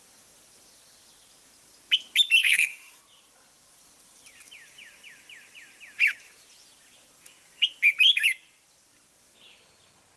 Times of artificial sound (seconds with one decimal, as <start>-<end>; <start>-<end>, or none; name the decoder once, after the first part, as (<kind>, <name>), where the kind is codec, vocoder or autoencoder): 2.4-3.0 (codec, SNAC)